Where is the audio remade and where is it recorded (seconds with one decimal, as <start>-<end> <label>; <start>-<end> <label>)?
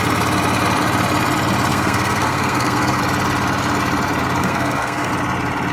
0.0-1.7 recorded; 1.7-3.0 remade; 3.0-4.4 recorded; 4.4-5.1 remade; 5.1-5.7 recorded